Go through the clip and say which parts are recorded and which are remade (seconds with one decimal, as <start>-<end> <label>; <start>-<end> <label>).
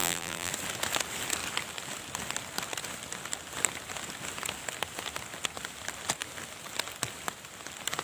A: 0.0-0.5 remade; 0.5-8.0 recorded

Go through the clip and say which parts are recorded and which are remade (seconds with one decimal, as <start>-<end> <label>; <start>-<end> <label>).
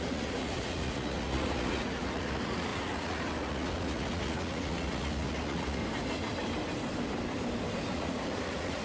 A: 0.0-5.8 remade; 5.8-7.9 recorded; 7.9-8.8 remade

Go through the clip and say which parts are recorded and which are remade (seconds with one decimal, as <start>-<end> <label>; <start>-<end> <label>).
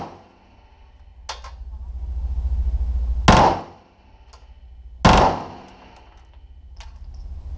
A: 0.0-7.6 recorded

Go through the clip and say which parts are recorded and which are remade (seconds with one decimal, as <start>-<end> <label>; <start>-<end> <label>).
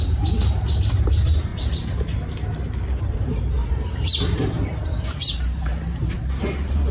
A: 0.0-1.5 remade; 1.5-3.0 recorded; 3.0-6.9 remade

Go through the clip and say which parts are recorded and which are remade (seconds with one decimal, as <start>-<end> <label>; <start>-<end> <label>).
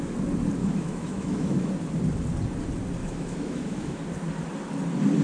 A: 0.0-0.6 recorded; 0.6-1.7 remade; 1.7-3.0 recorded; 3.0-4.0 remade; 4.0-5.2 recorded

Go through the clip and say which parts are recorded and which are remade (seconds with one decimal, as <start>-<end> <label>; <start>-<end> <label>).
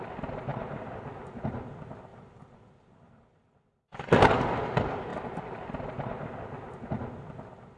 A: 0.0-0.5 recorded; 0.5-1.7 remade; 1.7-2.1 recorded; 2.1-4.4 remade; 4.4-7.8 recorded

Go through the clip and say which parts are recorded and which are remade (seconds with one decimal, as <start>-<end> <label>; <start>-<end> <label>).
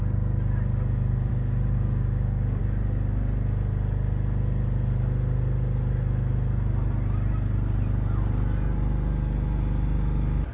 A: 0.0-1.3 recorded; 1.3-2.6 remade; 2.6-10.5 recorded